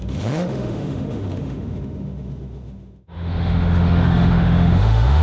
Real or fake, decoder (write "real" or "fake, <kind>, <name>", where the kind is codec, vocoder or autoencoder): fake, autoencoder, DAC-VAE